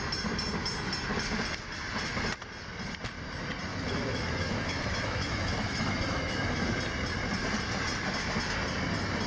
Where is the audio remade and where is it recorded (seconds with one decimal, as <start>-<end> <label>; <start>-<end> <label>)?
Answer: 0.0-3.7 recorded; 3.7-6.6 remade; 6.6-9.3 recorded